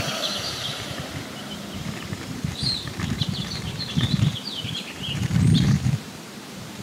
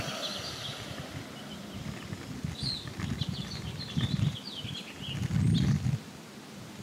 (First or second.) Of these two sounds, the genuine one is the second